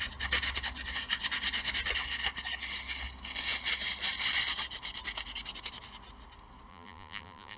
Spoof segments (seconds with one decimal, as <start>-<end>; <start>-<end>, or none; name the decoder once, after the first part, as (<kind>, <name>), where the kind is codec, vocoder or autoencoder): 6.7-7.6 (vocoder, BigVGAN v2)